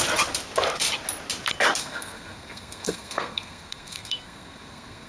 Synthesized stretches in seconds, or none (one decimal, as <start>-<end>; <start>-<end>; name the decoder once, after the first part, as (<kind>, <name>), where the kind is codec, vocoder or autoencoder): 1.8-5.1 (codec, SNAC)